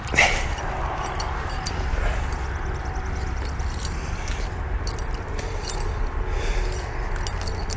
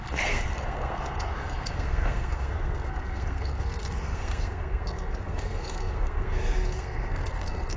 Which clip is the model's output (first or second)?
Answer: second